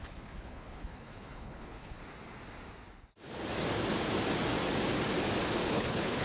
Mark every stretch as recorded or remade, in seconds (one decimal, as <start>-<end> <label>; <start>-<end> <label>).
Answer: 0.0-2.0 remade; 2.0-5.7 recorded; 5.7-6.2 remade